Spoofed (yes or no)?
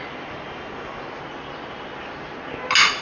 no